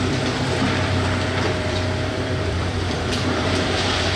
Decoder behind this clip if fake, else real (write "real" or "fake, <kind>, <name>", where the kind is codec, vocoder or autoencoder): fake, vocoder, BigVGAN v2